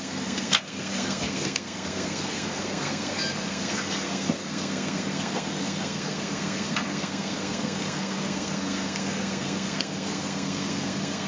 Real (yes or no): no